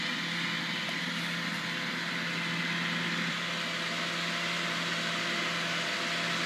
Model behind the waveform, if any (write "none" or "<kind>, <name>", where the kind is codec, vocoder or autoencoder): none